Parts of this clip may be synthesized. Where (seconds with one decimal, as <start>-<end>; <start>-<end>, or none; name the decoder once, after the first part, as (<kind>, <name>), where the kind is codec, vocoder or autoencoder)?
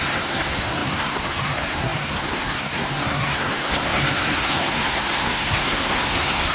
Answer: 0.0-6.5 (codec, SNAC)